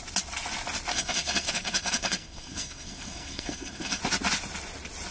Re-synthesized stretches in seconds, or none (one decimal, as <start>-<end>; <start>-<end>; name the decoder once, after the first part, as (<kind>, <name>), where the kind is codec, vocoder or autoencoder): 0.9-4.0 (codec, SNAC)